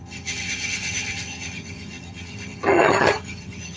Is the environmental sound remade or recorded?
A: remade